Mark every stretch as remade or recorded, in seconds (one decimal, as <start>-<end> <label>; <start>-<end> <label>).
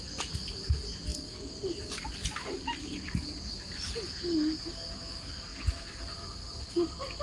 0.0-7.2 recorded